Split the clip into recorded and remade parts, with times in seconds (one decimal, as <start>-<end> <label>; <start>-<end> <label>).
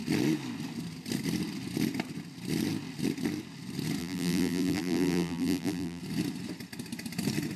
0.0-4.0 recorded; 4.0-6.0 remade; 6.0-7.6 recorded